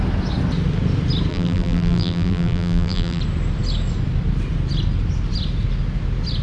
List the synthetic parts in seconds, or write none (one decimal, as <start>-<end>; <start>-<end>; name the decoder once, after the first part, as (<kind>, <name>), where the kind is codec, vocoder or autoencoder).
1.3-3.2 (vocoder, BigVGAN v2)